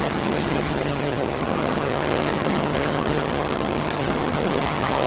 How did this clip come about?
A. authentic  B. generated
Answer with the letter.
B